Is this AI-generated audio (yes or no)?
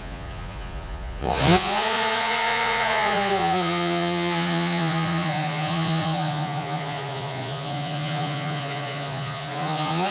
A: yes